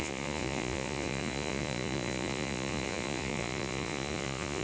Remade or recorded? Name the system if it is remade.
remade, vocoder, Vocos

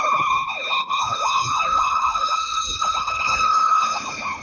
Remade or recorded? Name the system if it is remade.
remade, codec, HILCodec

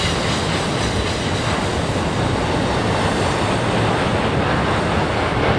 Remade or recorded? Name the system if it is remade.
recorded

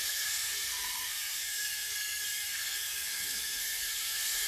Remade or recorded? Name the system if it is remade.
remade, codec, SNAC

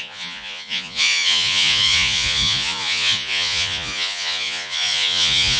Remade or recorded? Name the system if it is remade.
remade, vocoder, Vocos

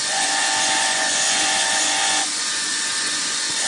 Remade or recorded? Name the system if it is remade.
remade, vocoder, Vocos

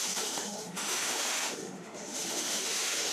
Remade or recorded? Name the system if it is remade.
remade, autoencoder, DAC-VAE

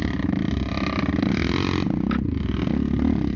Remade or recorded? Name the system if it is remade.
recorded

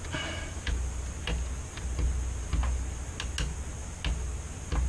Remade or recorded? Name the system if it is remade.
recorded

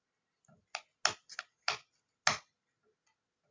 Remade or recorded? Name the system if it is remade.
recorded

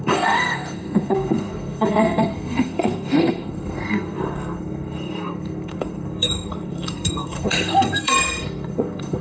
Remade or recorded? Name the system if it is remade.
remade, codec, SNAC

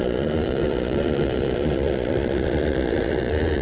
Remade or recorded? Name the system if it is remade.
remade, vocoder, Vocos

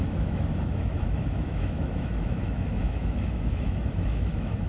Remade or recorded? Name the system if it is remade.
remade, autoencoder, DAC-VAE